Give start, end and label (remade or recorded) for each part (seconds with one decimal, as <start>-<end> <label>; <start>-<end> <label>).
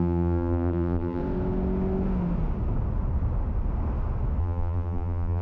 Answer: 0.0-1.2 remade; 1.2-4.4 recorded; 4.4-5.4 remade